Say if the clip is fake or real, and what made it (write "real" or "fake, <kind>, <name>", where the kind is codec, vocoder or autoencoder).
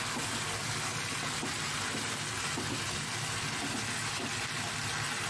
real